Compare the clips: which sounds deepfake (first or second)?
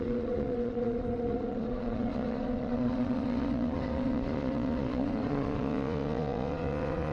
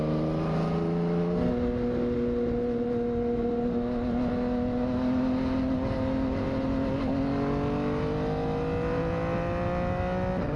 first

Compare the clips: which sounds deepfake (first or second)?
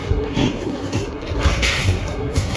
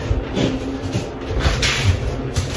first